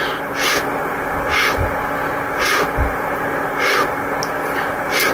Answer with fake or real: real